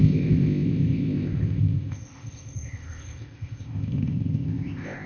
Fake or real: fake